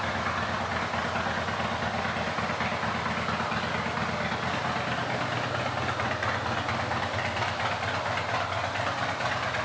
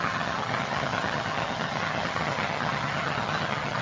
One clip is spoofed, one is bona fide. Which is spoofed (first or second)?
second